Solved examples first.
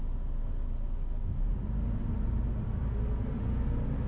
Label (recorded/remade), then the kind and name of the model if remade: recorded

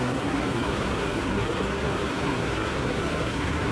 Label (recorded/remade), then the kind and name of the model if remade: remade, codec, SNAC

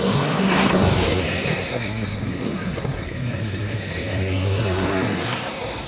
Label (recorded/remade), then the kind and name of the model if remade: remade, codec, SNAC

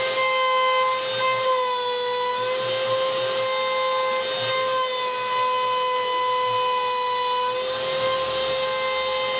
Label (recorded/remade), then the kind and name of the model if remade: recorded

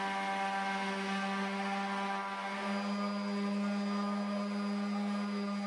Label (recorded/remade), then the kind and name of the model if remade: recorded